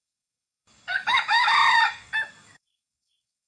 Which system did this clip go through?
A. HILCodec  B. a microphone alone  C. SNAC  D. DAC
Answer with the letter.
D